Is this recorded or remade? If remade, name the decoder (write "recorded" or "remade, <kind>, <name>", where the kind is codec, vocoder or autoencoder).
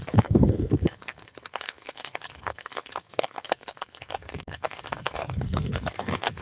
remade, codec, SNAC